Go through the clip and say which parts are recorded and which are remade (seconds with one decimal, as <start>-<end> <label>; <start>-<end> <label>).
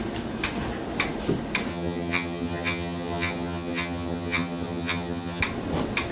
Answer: 0.0-1.7 recorded; 1.7-5.4 remade; 5.4-6.1 recorded